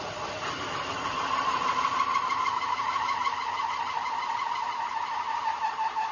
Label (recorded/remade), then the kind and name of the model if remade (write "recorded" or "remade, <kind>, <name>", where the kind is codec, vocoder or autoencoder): recorded